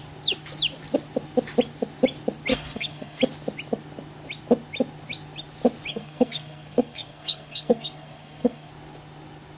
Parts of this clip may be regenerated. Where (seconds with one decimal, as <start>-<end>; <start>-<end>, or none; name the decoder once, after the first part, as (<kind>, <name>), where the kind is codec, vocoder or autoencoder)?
2.5-3.2 (codec, SNAC); 5.9-8.7